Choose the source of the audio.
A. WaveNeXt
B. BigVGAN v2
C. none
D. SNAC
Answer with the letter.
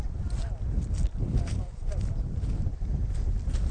C